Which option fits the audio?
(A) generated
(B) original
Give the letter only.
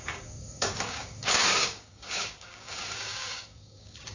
A